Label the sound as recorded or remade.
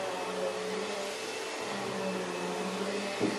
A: recorded